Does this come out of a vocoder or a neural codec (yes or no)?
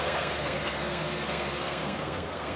yes